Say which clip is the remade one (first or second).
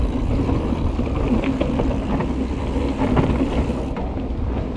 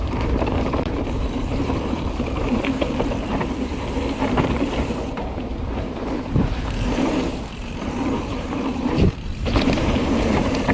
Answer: second